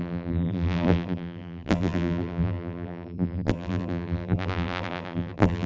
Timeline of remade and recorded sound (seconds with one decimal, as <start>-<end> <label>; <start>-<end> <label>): 0.0-5.7 remade